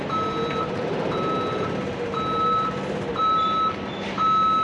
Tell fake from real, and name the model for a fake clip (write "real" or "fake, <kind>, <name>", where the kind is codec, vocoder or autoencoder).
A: real